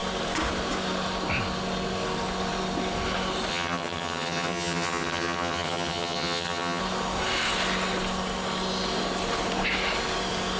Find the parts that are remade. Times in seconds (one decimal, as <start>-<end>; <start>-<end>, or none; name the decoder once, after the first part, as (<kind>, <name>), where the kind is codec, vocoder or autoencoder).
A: 3.5-6.8 (vocoder, HiFi-GAN)